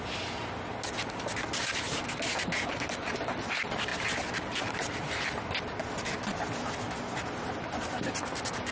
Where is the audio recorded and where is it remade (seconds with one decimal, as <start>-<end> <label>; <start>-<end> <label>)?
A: 0.0-8.7 recorded